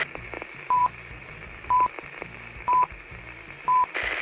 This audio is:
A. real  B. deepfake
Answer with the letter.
B